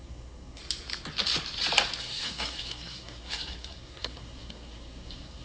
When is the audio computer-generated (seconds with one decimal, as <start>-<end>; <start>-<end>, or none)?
0.0-0.6; 2.0-5.4